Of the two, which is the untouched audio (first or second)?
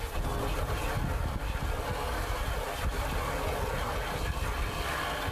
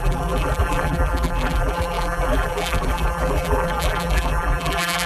first